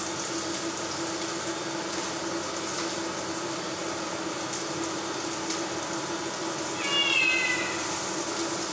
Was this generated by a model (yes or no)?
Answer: no